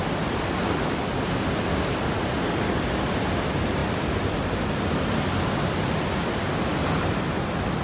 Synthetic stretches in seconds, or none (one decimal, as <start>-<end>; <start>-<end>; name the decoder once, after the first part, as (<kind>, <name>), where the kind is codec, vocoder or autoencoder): none